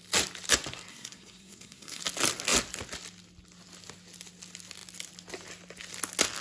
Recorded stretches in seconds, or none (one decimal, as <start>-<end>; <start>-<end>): 0.0-0.9; 2.0-6.4